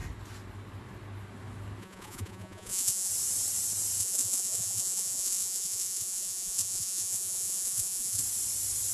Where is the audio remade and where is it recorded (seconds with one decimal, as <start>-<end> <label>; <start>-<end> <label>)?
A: 0.0-1.8 recorded; 1.8-3.1 remade; 3.1-4.0 recorded; 4.0-8.2 remade; 8.2-8.9 recorded